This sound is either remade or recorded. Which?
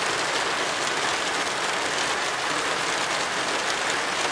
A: recorded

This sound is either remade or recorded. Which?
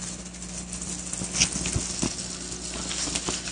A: recorded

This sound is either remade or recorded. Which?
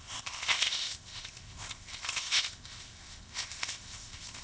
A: remade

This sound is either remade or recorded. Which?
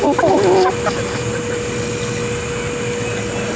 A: recorded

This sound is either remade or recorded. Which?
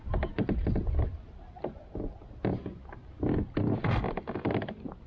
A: recorded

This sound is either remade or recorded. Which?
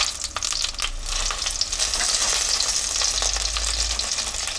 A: recorded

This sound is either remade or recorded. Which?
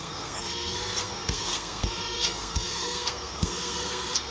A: remade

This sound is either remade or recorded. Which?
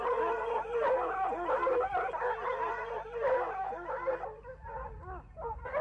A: recorded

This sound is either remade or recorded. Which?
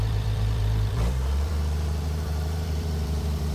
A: remade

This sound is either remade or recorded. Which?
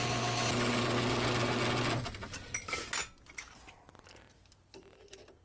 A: recorded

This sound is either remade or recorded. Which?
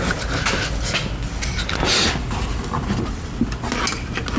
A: recorded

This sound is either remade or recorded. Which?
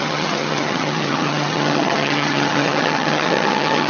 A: remade